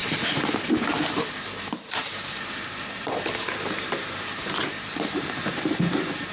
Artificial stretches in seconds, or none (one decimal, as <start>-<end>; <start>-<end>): 0.0-1.6; 2.0-5.8